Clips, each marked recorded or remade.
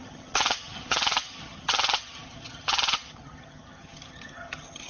remade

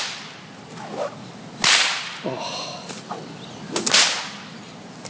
recorded